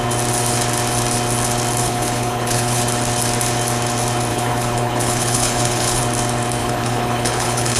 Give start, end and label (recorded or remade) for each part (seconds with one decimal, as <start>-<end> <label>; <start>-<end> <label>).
0.0-1.8 recorded; 1.8-2.8 remade; 2.8-4.3 recorded; 4.3-6.0 remade; 6.0-6.6 recorded; 6.6-7.8 remade